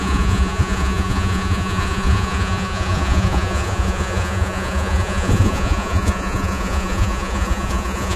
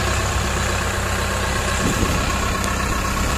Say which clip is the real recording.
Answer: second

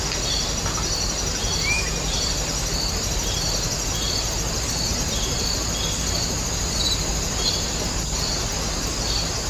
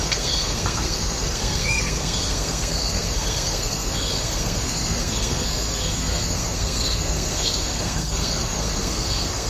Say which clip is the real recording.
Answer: first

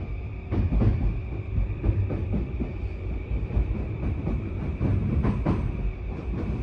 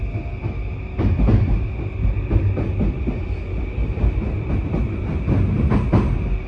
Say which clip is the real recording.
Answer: second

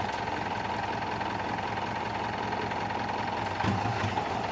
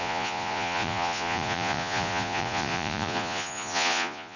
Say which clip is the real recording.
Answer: first